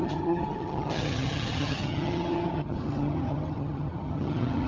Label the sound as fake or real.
fake